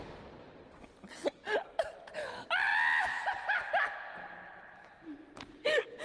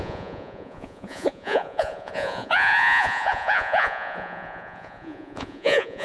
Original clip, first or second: first